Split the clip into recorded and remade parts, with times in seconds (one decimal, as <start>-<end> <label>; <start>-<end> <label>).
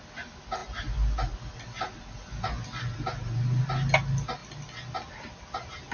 0.0-5.9 recorded